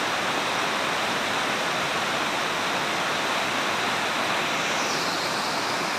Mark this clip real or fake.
real